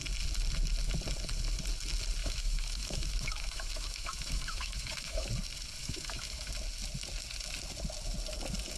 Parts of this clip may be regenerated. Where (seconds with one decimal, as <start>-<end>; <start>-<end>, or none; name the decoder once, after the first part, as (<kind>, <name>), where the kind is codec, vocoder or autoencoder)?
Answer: 2.2-5.3 (autoencoder, DAC-VAE); 5.8-6.5